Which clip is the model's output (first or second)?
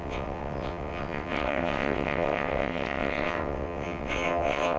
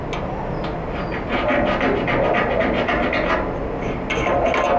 first